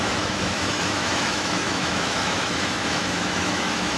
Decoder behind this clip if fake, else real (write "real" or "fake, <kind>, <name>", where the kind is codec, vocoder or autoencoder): fake, autoencoder, DAC-VAE